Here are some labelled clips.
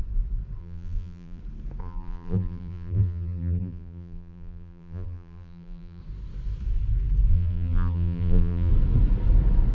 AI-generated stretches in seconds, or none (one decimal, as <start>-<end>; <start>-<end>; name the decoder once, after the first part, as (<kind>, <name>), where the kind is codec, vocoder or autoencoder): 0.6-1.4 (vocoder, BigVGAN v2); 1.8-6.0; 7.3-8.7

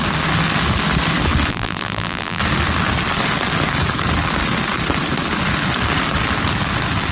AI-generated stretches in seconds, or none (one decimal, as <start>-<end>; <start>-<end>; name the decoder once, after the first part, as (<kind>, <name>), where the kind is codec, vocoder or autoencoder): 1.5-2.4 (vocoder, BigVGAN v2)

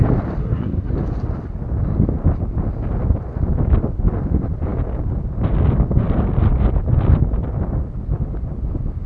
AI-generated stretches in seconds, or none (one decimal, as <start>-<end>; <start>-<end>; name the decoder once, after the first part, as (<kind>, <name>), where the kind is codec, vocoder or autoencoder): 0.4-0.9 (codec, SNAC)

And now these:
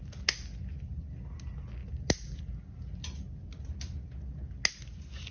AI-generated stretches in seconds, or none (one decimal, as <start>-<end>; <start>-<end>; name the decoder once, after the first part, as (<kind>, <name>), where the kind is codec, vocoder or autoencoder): none

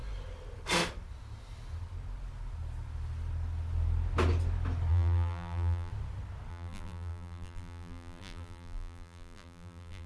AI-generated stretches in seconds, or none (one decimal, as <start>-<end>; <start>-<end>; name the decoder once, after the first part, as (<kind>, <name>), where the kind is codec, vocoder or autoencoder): 4.9-5.9 (vocoder, BigVGAN v2); 6.5-10.1